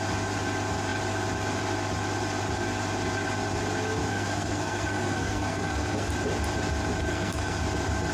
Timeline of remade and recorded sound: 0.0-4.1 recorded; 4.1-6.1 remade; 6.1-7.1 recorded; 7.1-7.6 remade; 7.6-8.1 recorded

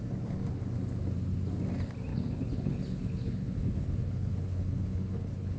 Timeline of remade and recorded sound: 0.0-2.1 recorded; 2.1-5.6 remade

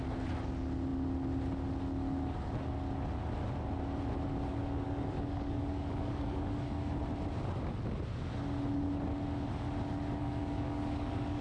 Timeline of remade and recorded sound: 0.0-4.5 recorded; 4.5-7.0 remade; 7.0-10.2 recorded; 10.2-11.4 remade

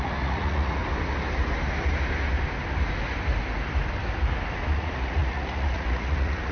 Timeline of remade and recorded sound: 0.0-0.8 remade; 0.8-4.7 recorded; 4.7-6.5 remade